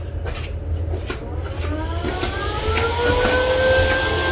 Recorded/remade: recorded